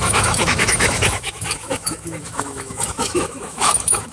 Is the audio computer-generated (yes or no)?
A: yes